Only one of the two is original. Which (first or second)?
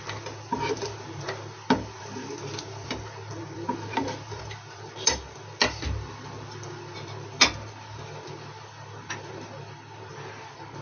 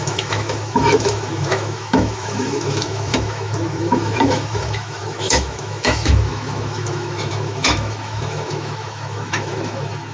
first